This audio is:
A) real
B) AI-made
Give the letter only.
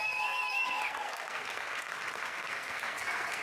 B